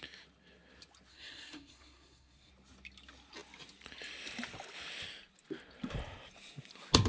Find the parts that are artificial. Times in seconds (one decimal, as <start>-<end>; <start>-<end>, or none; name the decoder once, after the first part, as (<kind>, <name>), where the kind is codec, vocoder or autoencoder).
1.1-2.5 (codec, SNAC)